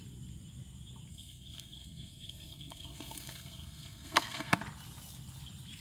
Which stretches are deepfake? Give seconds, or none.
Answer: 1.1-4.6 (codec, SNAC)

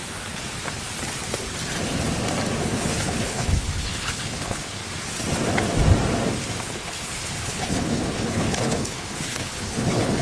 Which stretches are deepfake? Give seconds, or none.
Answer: 2.6-4.8 (codec, HILCodec); 6.6-10.2

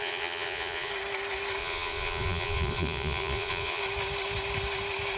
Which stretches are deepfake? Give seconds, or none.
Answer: 0.0-0.9 (vocoder, Vocos); 1.6-3.8